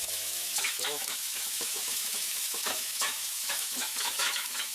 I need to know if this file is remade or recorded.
remade